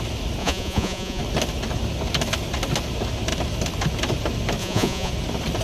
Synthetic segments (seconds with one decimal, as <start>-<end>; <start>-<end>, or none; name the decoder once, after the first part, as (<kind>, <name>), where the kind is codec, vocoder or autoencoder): 0.4-1.2 (vocoder, Vocos); 4.6-5.1